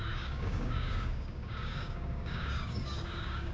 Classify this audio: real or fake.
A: fake